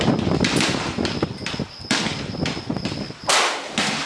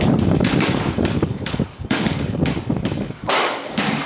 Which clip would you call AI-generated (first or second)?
second